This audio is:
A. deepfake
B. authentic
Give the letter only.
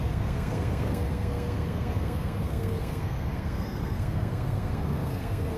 A